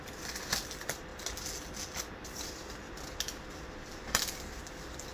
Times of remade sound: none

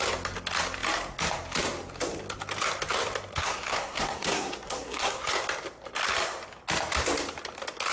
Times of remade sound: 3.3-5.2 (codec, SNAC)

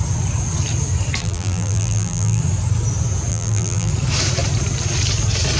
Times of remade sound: 1.2-2.4 (vocoder, BigVGAN v2); 3.3-3.9

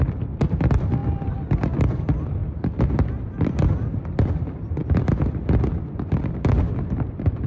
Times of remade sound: 0.0-7.5 (vocoder, BigVGAN v2)